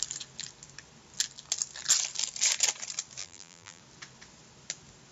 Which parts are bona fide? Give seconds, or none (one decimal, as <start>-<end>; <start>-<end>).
0.0-3.2; 3.8-5.1